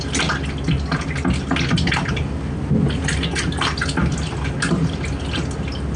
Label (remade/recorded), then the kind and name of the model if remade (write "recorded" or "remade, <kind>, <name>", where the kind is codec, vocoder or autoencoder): recorded